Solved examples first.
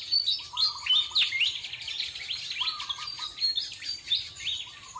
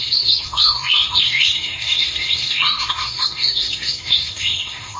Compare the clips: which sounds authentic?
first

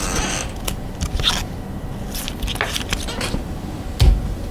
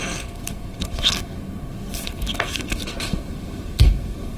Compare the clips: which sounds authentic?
first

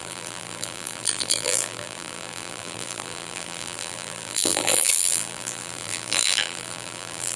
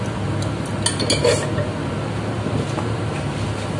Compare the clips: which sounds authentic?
second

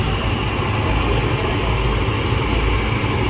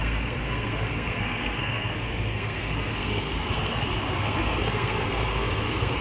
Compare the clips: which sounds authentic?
first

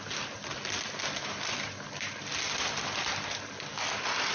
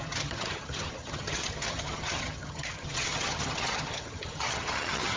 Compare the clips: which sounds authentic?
first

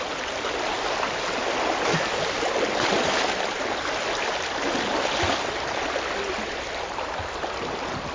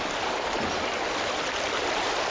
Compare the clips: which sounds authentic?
first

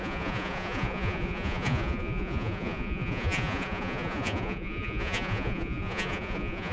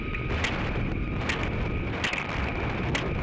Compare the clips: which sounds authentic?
second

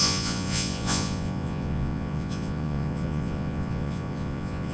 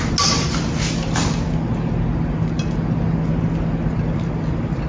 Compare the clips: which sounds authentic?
second